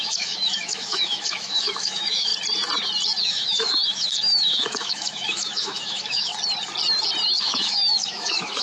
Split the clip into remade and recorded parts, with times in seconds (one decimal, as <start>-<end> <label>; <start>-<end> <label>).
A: 0.0-2.3 remade; 2.3-3.2 recorded; 3.2-6.3 remade; 6.3-7.4 recorded; 7.4-8.6 remade